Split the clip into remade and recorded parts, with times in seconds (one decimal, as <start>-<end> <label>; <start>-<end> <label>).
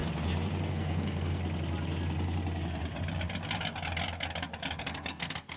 0.0-0.7 recorded; 0.7-1.4 remade; 1.4-4.8 recorded; 4.8-5.6 remade